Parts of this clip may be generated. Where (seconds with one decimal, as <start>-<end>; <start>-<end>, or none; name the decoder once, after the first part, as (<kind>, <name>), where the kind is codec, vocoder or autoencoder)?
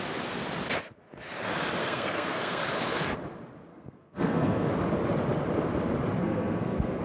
1.8-2.6 (codec, SNAC); 3.7-4.7; 6.2-7.0